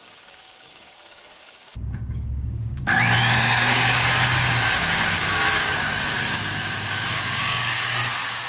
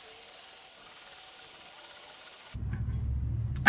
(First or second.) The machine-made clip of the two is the first